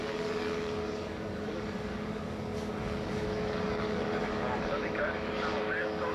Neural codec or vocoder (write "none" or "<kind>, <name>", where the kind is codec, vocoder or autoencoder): codec, DAC